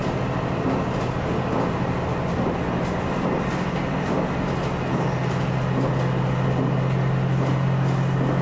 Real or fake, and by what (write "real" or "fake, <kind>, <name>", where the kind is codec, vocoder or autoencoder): real